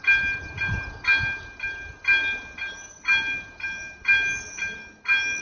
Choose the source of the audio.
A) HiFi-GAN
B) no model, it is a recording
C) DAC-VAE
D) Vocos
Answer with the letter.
B